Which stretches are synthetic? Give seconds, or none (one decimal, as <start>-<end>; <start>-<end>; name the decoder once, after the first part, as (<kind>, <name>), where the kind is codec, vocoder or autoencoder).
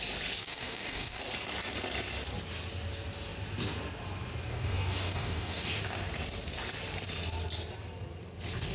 0.4-1.2 (codec, DAC); 4.5-5.8